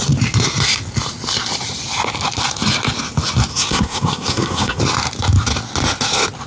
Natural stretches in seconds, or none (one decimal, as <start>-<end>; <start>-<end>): 0.0-3.5; 4.8-6.5